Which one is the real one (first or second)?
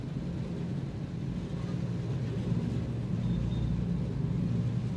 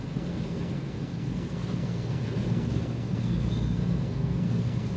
first